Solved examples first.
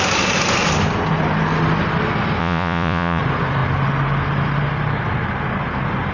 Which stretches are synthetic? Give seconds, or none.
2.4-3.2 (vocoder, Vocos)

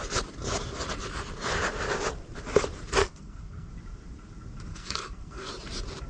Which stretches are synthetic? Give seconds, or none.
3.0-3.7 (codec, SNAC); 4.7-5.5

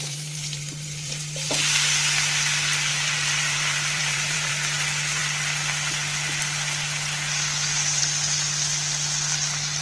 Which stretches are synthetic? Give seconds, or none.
0.0-1.5 (vocoder, BigVGAN v2); 2.9-4.5